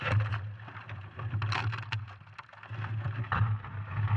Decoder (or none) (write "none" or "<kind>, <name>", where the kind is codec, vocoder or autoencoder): none